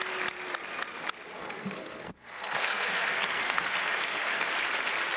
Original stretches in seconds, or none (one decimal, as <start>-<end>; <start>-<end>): 0.0-1.4; 4.5-5.2